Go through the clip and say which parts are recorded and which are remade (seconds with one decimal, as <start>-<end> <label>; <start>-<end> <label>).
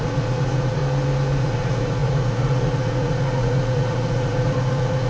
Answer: 0.0-0.8 remade; 0.8-1.4 recorded; 1.4-5.1 remade